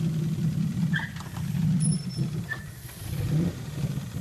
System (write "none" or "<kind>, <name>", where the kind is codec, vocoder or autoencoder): vocoder, BigVGAN v2